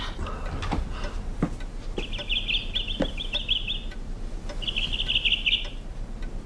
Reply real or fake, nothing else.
real